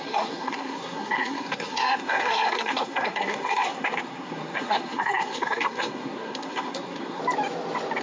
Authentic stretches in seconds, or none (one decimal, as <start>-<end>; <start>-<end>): 7.2-8.0